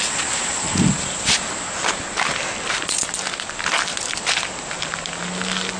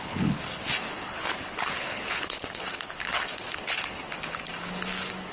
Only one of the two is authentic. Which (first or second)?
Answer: first